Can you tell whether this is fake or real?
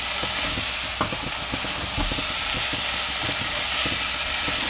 real